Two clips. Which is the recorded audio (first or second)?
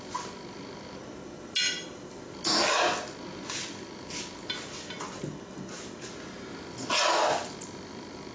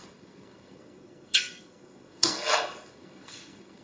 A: first